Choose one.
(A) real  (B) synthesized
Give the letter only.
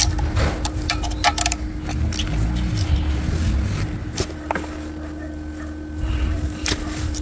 A